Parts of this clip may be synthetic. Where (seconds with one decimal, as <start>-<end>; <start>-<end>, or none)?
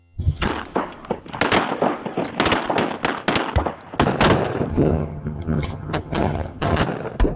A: 0.0-0.5; 4.7-6.8